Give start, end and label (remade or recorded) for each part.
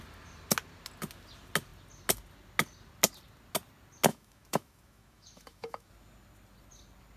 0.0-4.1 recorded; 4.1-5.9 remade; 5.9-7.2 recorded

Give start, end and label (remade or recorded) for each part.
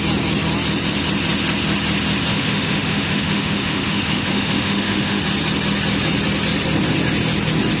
0.0-2.3 recorded; 2.3-5.2 remade; 5.2-7.8 recorded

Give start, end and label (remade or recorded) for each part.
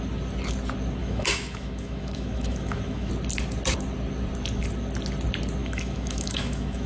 0.0-1.0 recorded; 1.0-3.1 remade; 3.1-5.6 recorded; 5.6-6.9 remade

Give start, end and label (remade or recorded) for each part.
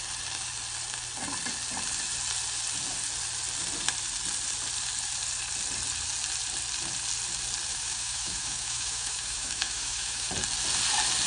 0.0-7.7 recorded; 7.7-10.3 remade; 10.3-11.3 recorded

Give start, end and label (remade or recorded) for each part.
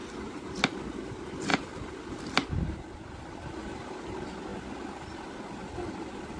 0.0-6.4 recorded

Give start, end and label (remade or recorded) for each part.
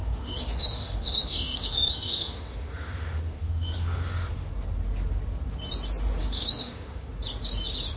0.0-4.5 remade; 4.5-6.2 recorded; 6.2-7.1 remade; 7.1-8.0 recorded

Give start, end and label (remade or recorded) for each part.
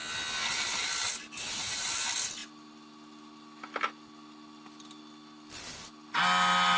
0.0-6.8 recorded